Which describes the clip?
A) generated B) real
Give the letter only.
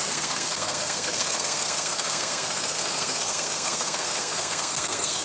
A